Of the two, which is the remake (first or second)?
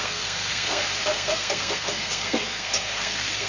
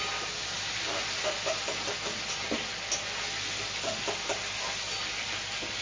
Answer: first